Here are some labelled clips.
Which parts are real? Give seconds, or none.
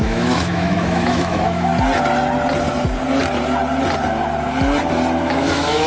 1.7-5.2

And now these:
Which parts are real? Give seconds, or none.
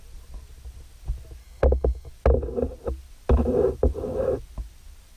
0.0-1.4; 2.1-5.2